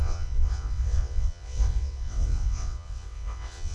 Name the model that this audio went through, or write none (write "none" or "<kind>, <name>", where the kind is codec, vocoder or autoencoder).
vocoder, WaveNeXt